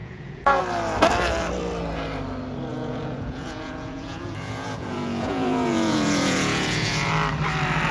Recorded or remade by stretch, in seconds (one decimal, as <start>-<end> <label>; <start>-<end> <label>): 0.0-0.6 remade; 0.6-2.7 recorded; 2.7-7.1 remade; 7.1-7.9 recorded